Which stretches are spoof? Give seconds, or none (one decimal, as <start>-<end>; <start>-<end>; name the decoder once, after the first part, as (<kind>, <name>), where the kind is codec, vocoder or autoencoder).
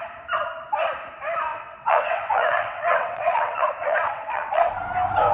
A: 1.5-4.7 (vocoder, WaveNeXt)